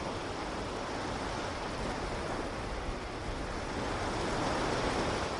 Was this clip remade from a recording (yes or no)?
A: no